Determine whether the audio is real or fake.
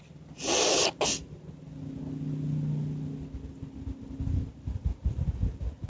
real